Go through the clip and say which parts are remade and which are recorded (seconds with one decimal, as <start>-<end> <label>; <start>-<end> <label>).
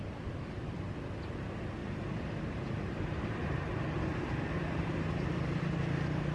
0.0-1.8 recorded; 1.8-5.6 remade; 5.6-6.3 recorded